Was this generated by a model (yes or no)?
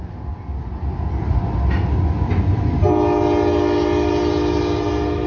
no